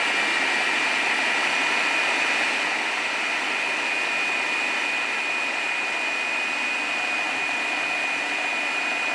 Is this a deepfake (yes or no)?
no